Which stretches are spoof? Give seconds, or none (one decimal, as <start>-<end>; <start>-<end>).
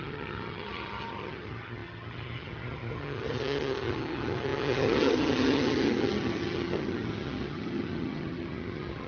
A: 0.0-9.1